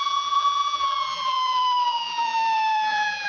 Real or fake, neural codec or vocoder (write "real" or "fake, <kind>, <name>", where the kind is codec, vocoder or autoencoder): fake, vocoder, BigVGAN v2